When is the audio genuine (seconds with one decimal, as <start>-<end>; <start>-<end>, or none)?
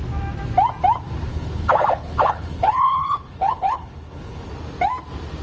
0.0-1.3; 4.5-5.4